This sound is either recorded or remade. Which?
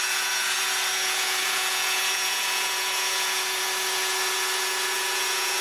remade